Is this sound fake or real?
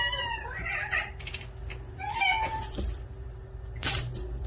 fake